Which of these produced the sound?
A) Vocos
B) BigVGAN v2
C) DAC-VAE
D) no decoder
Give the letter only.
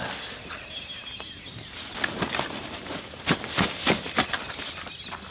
D